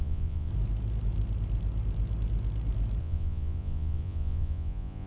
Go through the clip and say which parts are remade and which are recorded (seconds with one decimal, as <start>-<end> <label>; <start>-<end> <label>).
0.0-0.5 remade; 0.5-3.0 recorded; 3.0-5.1 remade

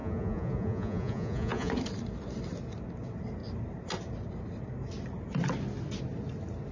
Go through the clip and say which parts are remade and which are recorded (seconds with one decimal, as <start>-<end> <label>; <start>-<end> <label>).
0.0-1.7 remade; 1.7-6.7 recorded

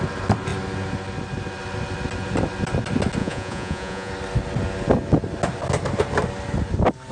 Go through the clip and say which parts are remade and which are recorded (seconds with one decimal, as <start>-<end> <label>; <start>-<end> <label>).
0.0-3.2 recorded; 3.2-4.1 remade; 4.1-7.1 recorded

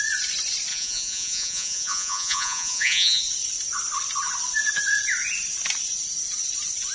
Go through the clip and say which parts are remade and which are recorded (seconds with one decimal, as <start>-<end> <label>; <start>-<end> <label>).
0.0-0.7 recorded; 0.7-3.2 remade; 3.2-6.9 recorded